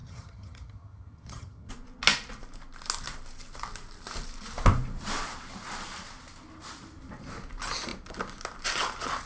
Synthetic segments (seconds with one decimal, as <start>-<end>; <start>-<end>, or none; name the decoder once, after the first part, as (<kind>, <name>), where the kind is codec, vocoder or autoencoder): 0.0-1.7 (vocoder, HiFi-GAN)